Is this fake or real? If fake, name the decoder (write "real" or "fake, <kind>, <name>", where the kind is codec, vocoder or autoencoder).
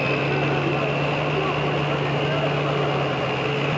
real